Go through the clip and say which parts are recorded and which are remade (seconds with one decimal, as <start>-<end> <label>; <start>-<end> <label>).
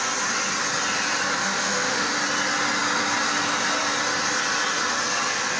0.0-1.4 recorded; 1.4-2.1 remade; 2.1-5.6 recorded